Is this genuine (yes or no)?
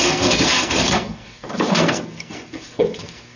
no